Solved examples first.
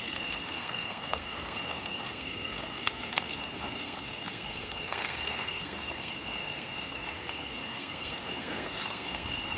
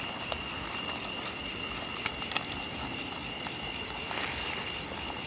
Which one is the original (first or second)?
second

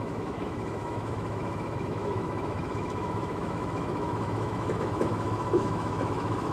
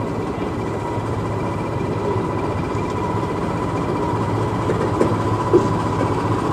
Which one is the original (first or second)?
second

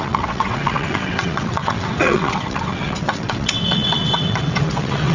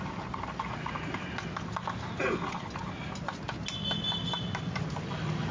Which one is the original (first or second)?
second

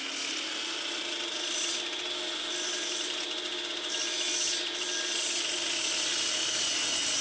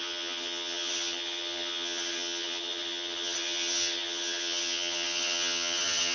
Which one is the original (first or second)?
first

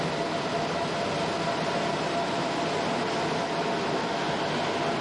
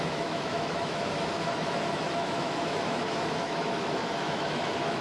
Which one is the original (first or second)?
first